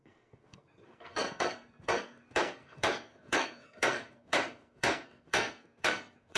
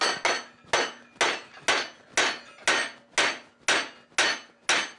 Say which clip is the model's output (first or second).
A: first